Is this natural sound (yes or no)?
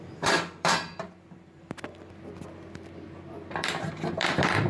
no